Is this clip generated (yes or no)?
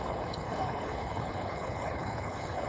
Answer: yes